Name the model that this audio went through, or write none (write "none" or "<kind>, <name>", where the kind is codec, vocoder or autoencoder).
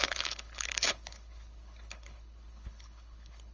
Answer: codec, HILCodec